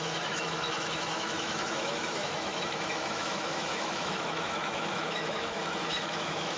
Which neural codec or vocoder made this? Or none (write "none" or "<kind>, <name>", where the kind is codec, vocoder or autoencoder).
autoencoder, DAC-VAE